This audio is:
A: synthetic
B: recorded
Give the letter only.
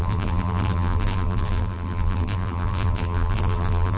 A